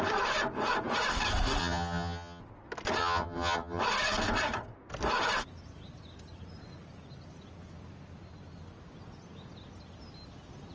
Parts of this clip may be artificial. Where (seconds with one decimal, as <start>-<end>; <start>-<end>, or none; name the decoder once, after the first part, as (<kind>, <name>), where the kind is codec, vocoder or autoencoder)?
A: 1.6-2.4 (vocoder, HiFi-GAN); 3.0-3.8